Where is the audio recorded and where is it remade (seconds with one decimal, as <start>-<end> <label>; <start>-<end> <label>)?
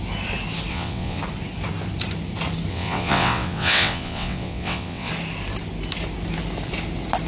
0.0-0.7 recorded; 0.7-1.2 remade; 1.2-2.7 recorded; 2.7-5.1 remade; 5.1-7.3 recorded